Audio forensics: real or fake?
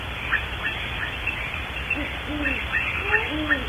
real